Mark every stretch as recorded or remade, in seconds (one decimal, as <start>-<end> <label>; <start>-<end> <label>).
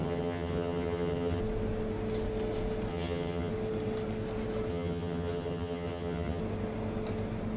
0.0-1.4 remade; 1.4-2.9 recorded; 2.9-3.5 remade; 3.5-4.7 recorded; 4.7-6.4 remade; 6.4-7.6 recorded